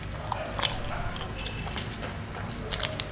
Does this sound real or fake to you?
real